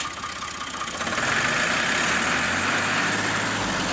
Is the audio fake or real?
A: real